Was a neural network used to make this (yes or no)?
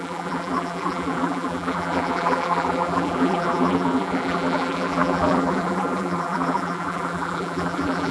yes